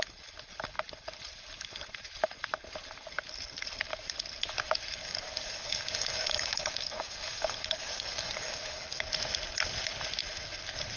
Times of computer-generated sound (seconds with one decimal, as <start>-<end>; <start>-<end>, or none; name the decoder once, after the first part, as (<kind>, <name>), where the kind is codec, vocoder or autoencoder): 5.0-9.0 (codec, DAC)